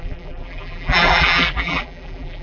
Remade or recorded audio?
remade